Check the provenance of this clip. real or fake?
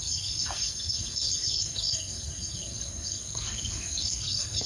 fake